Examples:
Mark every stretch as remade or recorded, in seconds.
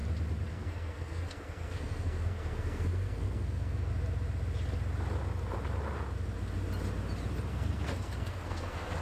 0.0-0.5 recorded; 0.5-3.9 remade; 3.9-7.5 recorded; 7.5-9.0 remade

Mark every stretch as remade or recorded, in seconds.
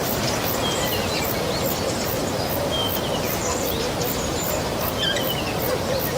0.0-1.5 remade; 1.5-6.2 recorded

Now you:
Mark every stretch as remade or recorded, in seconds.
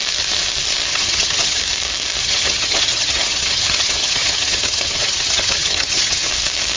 0.0-0.9 recorded; 0.9-1.6 remade; 1.6-2.2 recorded; 2.2-6.3 remade; 6.3-6.8 recorded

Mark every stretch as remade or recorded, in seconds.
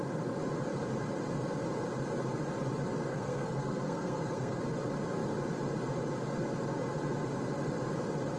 0.0-3.1 recorded; 3.1-4.6 remade; 4.6-8.4 recorded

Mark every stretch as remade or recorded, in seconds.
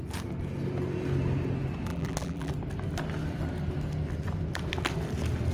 0.0-1.9 recorded; 1.9-2.5 remade; 2.5-5.5 recorded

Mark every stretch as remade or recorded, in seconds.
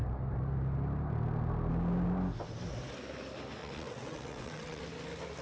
0.0-3.6 recorded; 3.6-4.8 remade; 4.8-5.4 recorded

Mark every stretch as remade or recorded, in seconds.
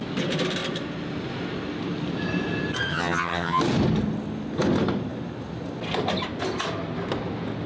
0.0-2.9 recorded; 2.9-3.6 remade; 3.6-7.7 recorded